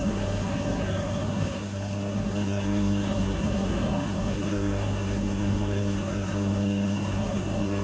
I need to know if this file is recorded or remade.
remade